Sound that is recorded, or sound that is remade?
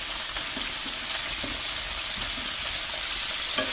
recorded